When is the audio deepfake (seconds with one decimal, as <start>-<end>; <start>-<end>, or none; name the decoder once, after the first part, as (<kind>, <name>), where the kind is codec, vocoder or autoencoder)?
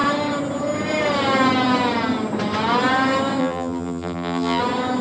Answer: 3.4-4.6 (vocoder, BigVGAN v2)